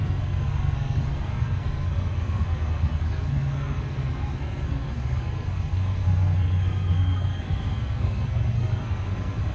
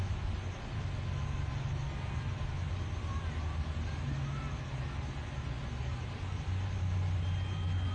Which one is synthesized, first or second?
first